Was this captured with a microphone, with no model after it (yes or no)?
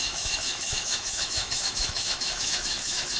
no